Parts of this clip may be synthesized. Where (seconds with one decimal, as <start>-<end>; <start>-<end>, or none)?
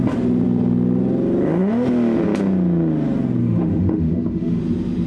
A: 3.4-4.6